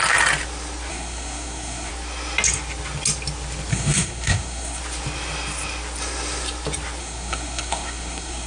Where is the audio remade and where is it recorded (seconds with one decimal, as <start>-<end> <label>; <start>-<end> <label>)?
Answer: 0.0-0.9 recorded; 0.9-1.9 remade; 1.9-3.7 recorded; 3.7-4.8 remade; 4.8-7.0 recorded; 7.0-8.5 remade